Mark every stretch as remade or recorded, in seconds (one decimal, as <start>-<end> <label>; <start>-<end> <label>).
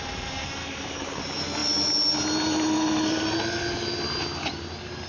0.0-0.6 recorded; 0.6-1.2 remade; 1.2-5.1 recorded